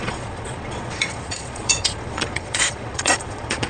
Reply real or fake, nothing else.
fake